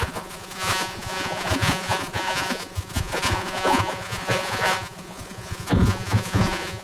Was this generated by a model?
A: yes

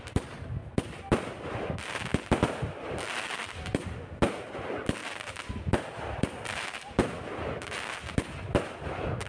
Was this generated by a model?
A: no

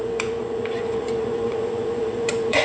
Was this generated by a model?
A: yes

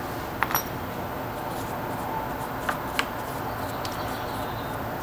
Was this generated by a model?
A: no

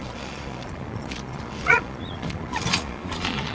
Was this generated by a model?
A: yes